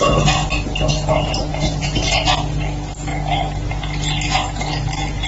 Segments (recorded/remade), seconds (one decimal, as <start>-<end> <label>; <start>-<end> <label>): 0.0-1.5 recorded; 1.5-2.1 remade; 2.1-5.3 recorded